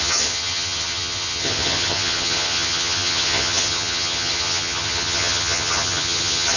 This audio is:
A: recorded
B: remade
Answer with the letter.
B